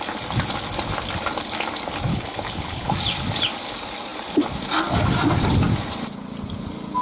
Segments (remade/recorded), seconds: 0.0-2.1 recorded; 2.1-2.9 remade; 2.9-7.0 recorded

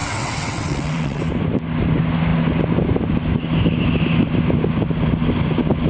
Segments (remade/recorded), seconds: 0.0-1.2 remade; 1.2-5.9 recorded

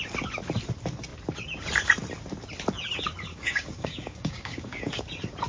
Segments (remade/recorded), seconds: 0.0-3.3 recorded; 3.3-5.0 remade; 5.0-5.5 recorded

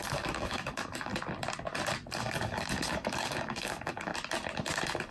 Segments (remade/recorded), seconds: 0.0-1.1 remade; 1.1-2.1 recorded; 2.1-4.1 remade; 4.1-5.1 recorded